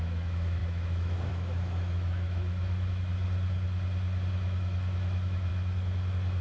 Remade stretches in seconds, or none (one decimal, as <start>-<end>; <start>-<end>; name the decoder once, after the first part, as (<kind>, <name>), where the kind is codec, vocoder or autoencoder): 0.0-3.1 (autoencoder, DAC-VAE); 4.3-5.5